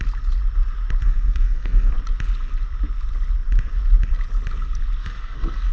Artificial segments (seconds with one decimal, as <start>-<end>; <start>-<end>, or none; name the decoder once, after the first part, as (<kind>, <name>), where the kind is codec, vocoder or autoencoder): 1.0-1.9 (codec, SNAC); 5.0-5.7